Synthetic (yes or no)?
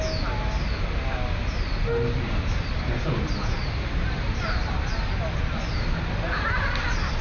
no